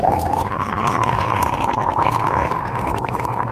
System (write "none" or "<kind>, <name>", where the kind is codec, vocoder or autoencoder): autoencoder, DAC-VAE